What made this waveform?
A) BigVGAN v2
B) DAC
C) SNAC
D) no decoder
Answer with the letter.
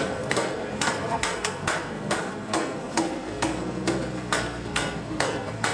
C